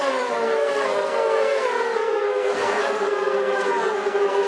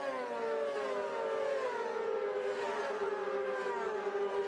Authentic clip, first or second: second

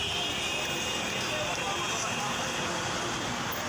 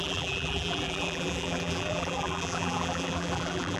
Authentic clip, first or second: first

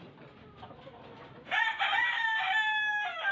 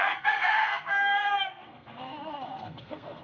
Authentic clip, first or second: first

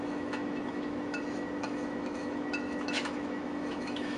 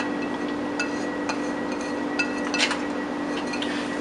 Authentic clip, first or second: second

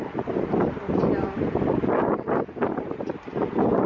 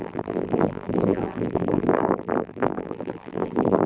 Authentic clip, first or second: first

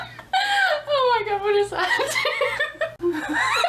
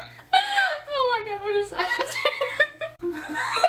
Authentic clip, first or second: first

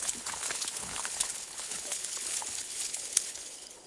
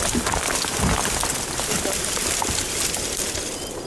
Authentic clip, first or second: second